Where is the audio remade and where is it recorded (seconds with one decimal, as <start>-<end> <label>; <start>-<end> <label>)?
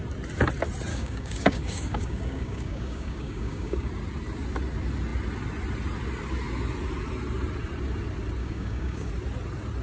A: 0.0-0.9 recorded; 0.9-3.9 remade; 3.9-8.4 recorded; 8.4-9.1 remade; 9.1-9.8 recorded